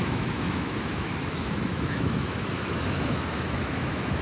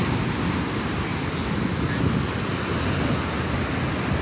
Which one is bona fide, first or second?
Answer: second